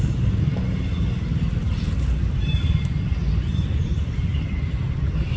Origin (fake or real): real